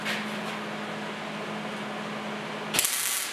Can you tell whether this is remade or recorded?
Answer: recorded